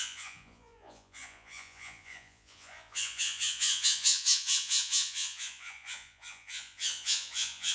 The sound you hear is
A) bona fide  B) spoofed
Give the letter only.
B